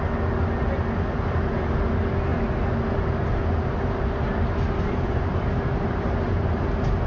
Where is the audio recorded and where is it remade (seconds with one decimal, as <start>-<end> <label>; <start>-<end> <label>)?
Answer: 0.0-7.1 recorded